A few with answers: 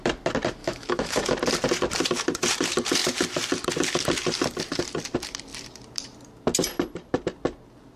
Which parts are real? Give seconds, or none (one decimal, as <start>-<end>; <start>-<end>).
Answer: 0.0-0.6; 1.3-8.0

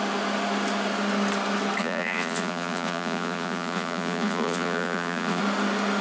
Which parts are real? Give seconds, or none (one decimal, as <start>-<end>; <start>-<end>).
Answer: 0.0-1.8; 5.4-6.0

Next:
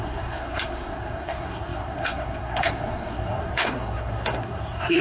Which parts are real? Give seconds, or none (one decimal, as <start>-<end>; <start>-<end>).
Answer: none

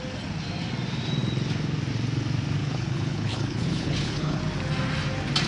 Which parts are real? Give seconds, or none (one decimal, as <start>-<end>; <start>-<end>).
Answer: 0.0-2.6; 4.4-5.5